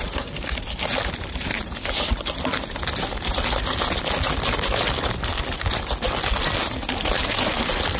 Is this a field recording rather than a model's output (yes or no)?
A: yes